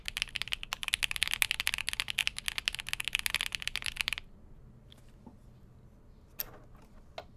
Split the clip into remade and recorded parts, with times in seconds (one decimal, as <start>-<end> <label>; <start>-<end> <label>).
0.0-7.4 recorded

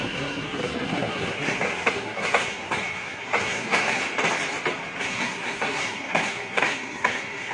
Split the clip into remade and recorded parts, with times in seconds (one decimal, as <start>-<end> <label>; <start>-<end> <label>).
0.0-4.0 remade; 4.0-5.0 recorded; 5.0-7.5 remade

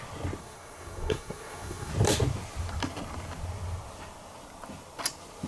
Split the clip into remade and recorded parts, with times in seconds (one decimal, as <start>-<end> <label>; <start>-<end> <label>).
0.0-0.4 recorded; 0.4-1.9 remade; 1.9-5.5 recorded